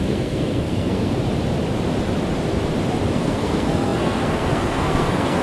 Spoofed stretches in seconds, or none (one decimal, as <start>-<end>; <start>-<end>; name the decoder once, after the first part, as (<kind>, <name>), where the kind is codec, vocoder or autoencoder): 0.0-1.2 (codec, SNAC); 3.1-5.4